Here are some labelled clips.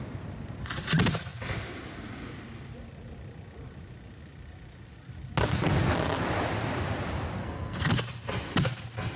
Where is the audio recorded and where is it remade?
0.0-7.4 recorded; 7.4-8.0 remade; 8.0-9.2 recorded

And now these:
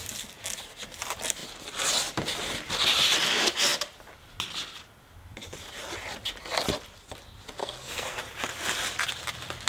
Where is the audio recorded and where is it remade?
0.0-7.6 recorded; 7.6-8.2 remade; 8.2-9.7 recorded

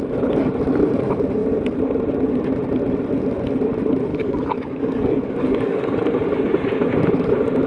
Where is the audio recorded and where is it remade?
0.0-4.1 recorded; 4.1-5.8 remade; 5.8-7.7 recorded

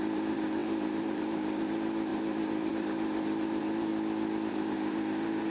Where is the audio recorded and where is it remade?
0.0-3.9 remade; 3.9-4.5 recorded; 4.5-5.5 remade

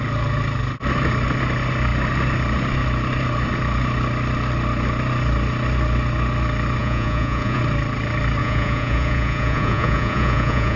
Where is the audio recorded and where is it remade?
0.0-6.8 recorded; 6.8-7.6 remade; 7.6-8.4 recorded; 8.4-10.8 remade

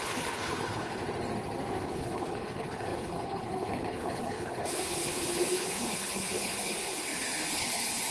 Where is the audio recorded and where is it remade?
0.0-1.0 remade; 1.0-1.8 recorded; 1.8-8.1 remade

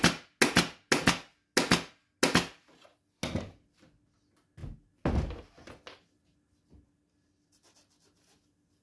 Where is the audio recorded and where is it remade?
0.0-8.8 recorded